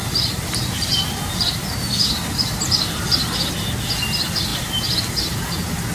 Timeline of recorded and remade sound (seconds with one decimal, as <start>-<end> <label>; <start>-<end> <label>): 0.0-3.5 remade; 3.5-5.9 recorded